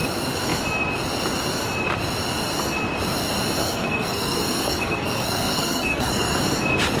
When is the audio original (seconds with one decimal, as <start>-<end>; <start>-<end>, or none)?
0.0-3.6; 6.4-7.0